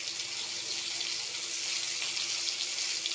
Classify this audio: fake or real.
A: real